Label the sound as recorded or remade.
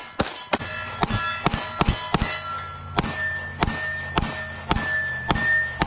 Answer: recorded